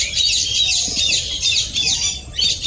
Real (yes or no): yes